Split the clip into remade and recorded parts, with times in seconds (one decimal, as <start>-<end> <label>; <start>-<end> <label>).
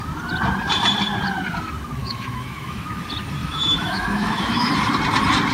0.0-2.0 recorded; 2.0-3.0 remade; 3.0-3.4 recorded; 3.4-4.7 remade; 4.7-5.5 recorded